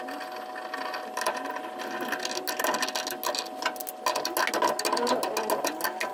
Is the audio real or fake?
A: real